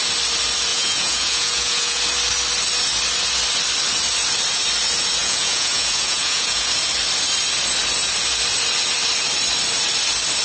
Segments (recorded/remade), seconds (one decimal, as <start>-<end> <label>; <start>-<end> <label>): 0.0-0.7 recorded; 0.7-2.0 remade; 2.0-5.2 recorded; 5.2-6.7 remade; 6.7-10.4 recorded